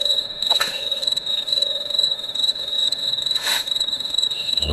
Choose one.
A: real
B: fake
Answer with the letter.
B